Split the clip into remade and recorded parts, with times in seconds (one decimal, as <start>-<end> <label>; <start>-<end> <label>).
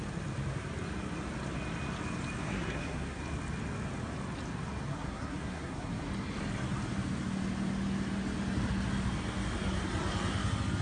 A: 0.0-2.4 recorded; 2.4-3.2 remade; 3.2-4.9 recorded; 4.9-6.1 remade; 6.1-10.8 recorded